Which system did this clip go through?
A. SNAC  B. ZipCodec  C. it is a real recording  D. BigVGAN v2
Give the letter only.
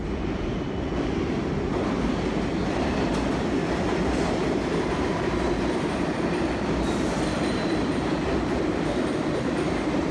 C